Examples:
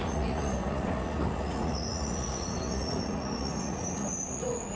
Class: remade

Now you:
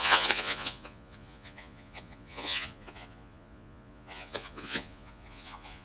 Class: remade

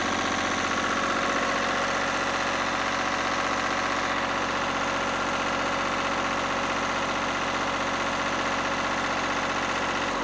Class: recorded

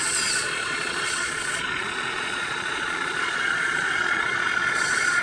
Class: remade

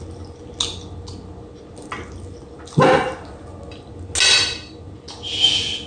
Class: recorded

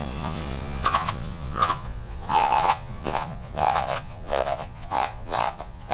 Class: remade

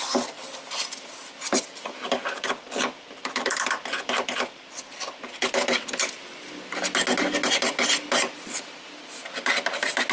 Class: recorded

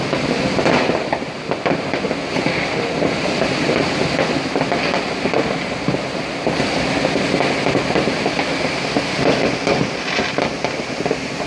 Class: recorded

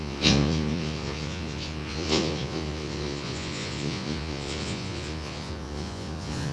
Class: remade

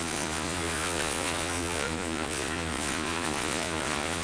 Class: remade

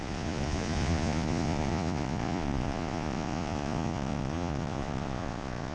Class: remade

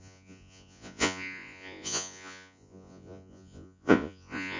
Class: remade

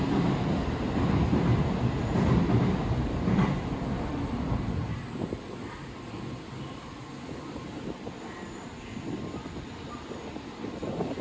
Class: recorded